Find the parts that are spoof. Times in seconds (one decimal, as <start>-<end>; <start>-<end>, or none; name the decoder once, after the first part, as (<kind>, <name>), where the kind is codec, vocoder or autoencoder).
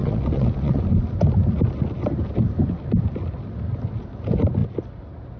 0.0-0.8 (vocoder, Vocos)